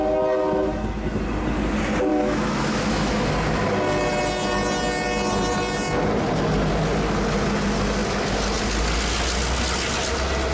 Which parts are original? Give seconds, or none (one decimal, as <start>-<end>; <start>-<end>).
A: 0.0-2.1; 3.3-10.5